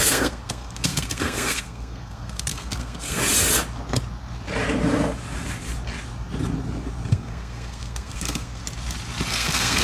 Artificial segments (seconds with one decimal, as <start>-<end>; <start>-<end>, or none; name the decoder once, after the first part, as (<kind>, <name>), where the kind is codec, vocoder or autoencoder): 0.0-3.2 (codec, SNAC); 7.1-8.6; 9.3-9.8